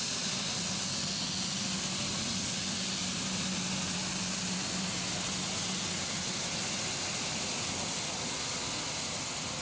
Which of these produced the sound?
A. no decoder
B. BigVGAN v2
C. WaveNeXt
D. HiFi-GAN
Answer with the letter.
A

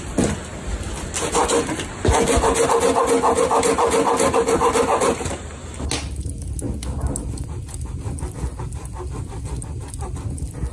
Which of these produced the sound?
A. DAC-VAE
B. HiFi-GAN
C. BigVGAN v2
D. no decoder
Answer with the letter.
D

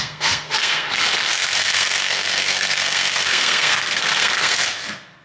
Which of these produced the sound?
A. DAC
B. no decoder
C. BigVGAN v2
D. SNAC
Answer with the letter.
D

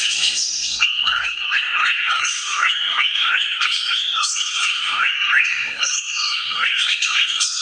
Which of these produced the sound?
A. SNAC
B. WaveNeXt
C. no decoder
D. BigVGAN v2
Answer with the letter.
A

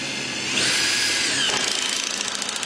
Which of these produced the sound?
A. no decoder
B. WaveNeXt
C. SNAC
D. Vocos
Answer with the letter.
A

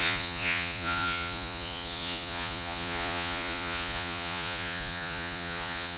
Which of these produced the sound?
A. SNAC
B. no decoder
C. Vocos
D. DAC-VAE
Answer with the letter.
C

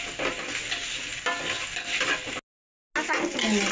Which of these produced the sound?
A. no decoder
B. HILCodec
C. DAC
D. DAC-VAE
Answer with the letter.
A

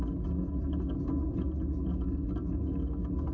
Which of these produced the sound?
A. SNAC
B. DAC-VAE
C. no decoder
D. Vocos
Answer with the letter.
C